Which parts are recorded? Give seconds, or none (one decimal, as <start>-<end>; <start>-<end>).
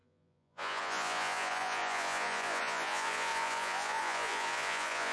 none